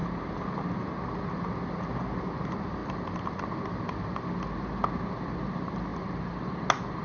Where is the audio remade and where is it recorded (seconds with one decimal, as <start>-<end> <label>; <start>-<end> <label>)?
0.0-7.0 recorded